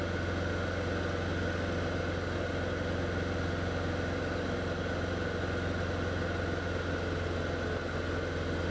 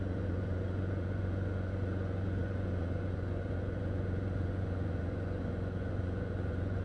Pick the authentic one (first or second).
first